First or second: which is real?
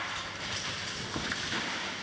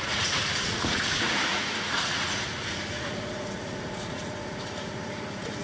first